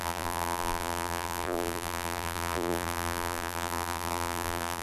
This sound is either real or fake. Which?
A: fake